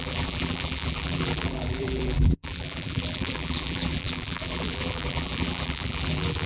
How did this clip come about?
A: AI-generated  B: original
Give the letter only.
A